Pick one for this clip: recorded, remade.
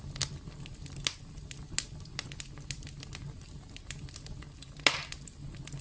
recorded